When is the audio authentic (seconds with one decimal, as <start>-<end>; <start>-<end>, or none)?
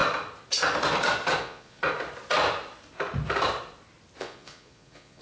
0.0-1.4; 1.8-4.2